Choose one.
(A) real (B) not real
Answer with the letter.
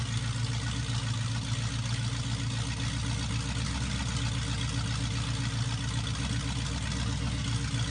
A